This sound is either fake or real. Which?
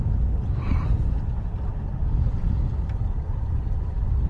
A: real